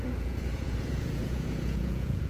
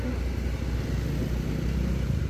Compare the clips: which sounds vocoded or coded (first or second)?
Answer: first